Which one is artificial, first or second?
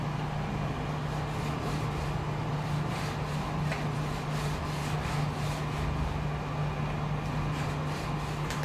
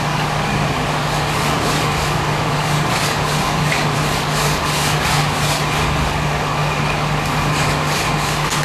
second